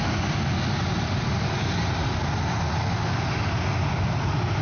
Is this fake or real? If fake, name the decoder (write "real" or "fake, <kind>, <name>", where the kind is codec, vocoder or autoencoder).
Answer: real